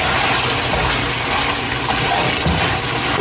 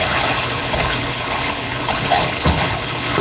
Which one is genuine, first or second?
first